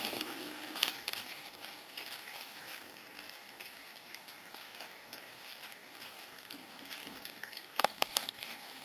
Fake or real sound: fake